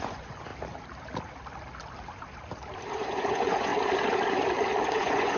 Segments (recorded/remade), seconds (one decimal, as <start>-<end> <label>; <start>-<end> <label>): 0.0-0.5 remade; 0.5-2.9 recorded; 2.9-3.7 remade; 3.7-4.9 recorded; 4.9-5.4 remade